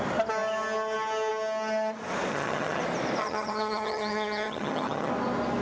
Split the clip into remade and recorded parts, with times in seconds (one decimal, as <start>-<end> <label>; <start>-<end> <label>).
0.0-2.3 recorded; 2.3-2.8 remade; 2.8-3.2 recorded; 3.2-5.1 remade; 5.1-5.6 recorded